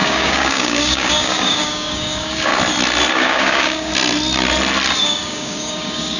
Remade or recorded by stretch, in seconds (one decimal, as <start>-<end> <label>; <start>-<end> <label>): 0.0-2.5 remade; 2.5-3.1 recorded; 3.1-3.9 remade; 3.9-5.0 recorded; 5.0-6.2 remade

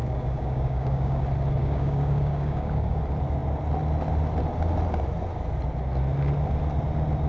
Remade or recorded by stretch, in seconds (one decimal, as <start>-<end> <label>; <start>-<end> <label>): 0.0-1.2 remade; 1.2-1.6 recorded; 1.6-3.0 remade; 3.0-7.3 recorded

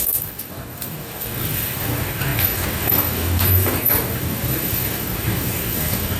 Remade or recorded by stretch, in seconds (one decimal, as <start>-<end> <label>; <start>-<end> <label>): 0.0-6.2 remade

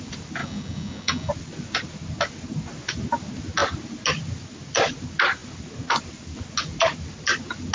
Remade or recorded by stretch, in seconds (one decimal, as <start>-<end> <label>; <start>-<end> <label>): 0.0-0.4 recorded; 0.4-1.3 remade; 1.3-7.7 recorded